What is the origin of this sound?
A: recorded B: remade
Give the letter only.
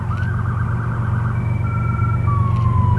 A